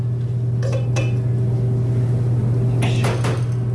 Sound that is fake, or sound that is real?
real